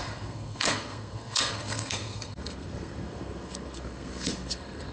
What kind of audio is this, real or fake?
fake